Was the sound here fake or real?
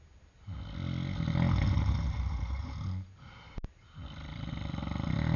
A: real